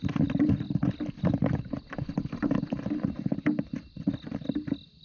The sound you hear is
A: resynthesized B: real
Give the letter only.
B